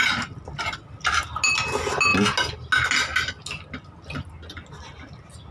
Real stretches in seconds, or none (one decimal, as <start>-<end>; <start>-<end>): 0.0-5.5